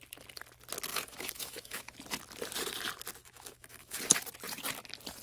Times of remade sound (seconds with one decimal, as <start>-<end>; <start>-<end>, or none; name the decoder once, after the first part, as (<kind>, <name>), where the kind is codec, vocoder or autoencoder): 0.9-1.9 (autoencoder, DAC-VAE); 3.2-4.0